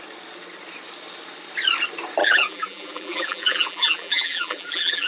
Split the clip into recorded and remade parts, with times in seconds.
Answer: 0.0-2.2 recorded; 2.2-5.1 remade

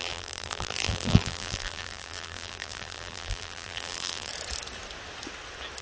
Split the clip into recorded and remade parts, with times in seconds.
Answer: 0.0-4.3 remade; 4.3-5.8 recorded

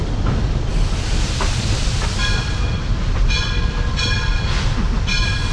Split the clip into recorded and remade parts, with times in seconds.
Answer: 0.0-5.5 recorded

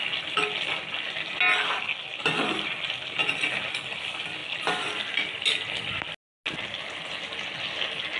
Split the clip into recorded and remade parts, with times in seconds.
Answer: 0.0-8.2 recorded

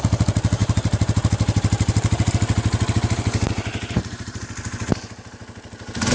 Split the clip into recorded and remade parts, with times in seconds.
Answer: 0.0-0.6 recorded; 0.6-2.3 remade; 2.3-3.7 recorded; 3.7-4.4 remade; 4.4-6.1 recorded

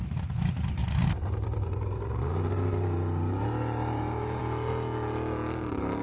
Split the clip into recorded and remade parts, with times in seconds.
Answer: 0.0-0.8 recorded; 0.8-4.4 remade; 4.4-6.0 recorded